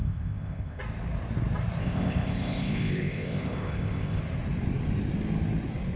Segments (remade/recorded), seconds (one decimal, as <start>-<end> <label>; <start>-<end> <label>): 0.0-0.8 remade; 0.8-1.8 recorded; 1.8-4.2 remade; 4.2-6.0 recorded